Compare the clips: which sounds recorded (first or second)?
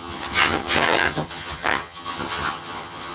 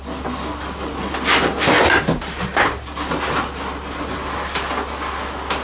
second